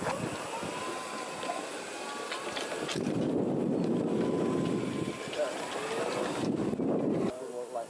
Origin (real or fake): real